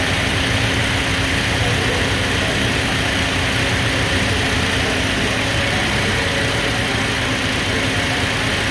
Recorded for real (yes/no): yes